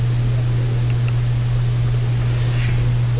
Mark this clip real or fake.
real